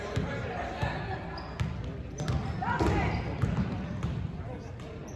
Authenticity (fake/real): real